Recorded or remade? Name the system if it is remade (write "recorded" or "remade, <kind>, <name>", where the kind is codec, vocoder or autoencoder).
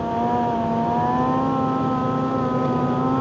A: recorded